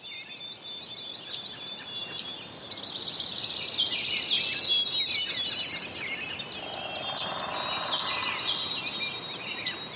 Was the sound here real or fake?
real